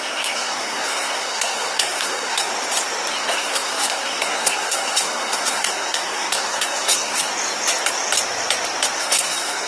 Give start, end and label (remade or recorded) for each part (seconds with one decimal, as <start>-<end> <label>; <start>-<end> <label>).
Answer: 0.0-2.5 remade; 2.5-3.1 recorded; 3.1-7.3 remade; 7.3-9.0 recorded; 9.0-9.7 remade